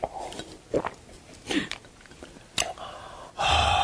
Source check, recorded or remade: recorded